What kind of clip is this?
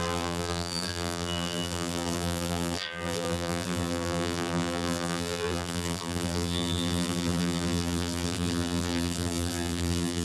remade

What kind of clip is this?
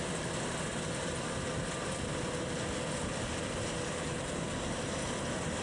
recorded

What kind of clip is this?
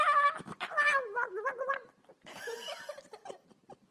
remade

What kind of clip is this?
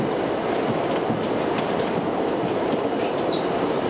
recorded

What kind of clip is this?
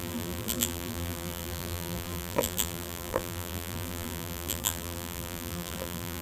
remade